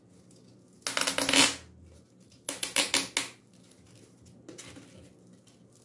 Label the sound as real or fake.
real